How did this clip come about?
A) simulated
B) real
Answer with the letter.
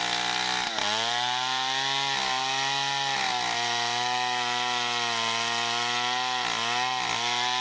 B